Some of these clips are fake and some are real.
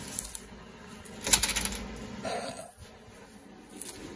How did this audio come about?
real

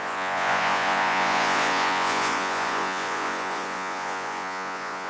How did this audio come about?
fake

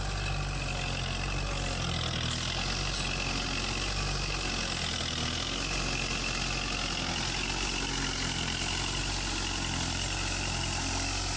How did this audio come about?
real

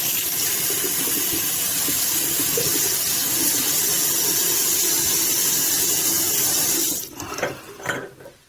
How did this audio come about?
fake